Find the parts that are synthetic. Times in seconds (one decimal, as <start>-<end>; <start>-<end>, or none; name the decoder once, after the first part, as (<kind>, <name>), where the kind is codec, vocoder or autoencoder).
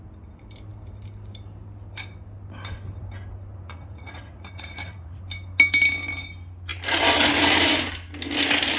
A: 3.5-5.2 (vocoder, Vocos)